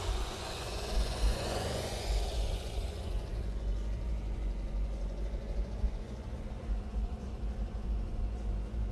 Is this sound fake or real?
fake